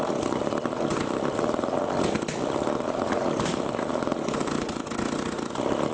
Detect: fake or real real